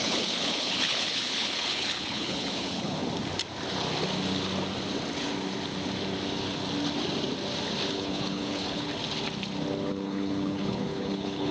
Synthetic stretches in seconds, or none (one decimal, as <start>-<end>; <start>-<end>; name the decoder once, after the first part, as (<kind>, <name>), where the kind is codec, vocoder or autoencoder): 0.0-3.0 (codec, HILCodec); 7.9-8.9; 9.9-11.5